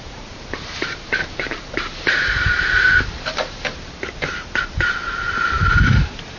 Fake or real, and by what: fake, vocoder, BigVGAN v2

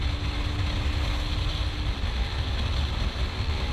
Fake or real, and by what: real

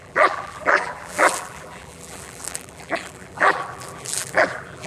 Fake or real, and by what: fake, vocoder, BigVGAN v2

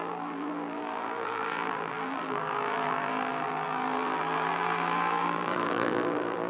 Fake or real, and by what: fake, vocoder, BigVGAN v2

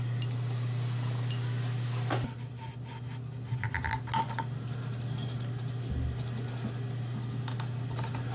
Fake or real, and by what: real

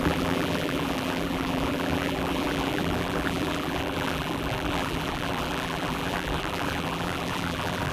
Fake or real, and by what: fake, vocoder, BigVGAN v2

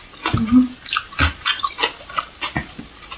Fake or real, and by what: real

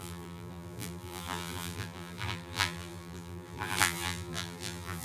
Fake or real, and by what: fake, vocoder, BigVGAN v2